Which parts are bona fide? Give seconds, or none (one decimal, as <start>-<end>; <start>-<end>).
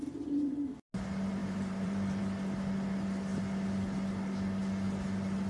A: 0.0-1.4; 2.2-5.5